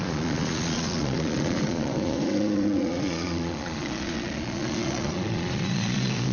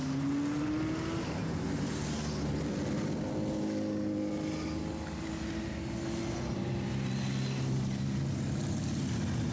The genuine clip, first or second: second